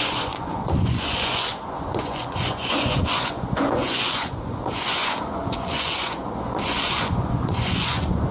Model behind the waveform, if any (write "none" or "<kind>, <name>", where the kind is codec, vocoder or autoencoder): vocoder, Vocos